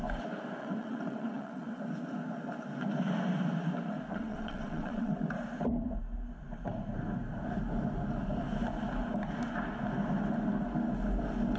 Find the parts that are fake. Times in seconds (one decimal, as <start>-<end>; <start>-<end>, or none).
0.6-1.8; 4.1-5.1